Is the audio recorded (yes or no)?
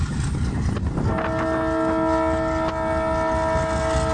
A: yes